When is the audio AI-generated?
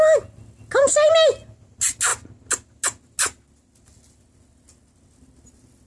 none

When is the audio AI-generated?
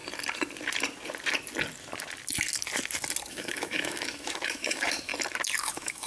3.3-5.1; 5.6-6.1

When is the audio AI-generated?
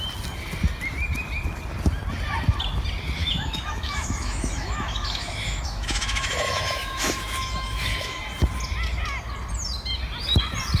3.2-8.2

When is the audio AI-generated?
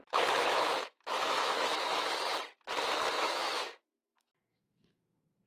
0.0-2.3; 3.1-5.5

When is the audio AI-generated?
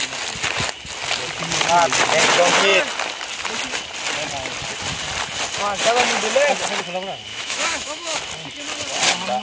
7.3-8.2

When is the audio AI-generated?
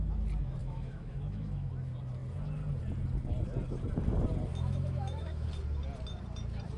0.6-1.7; 4.5-5.5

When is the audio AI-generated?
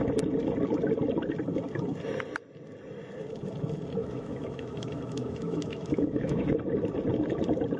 4.0-6.5